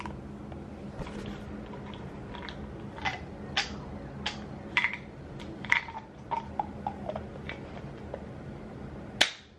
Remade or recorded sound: recorded